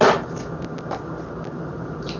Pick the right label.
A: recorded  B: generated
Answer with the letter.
A